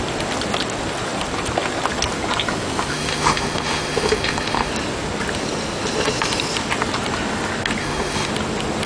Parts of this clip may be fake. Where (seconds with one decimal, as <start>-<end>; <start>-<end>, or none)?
2.9-4.7; 7.8-8.3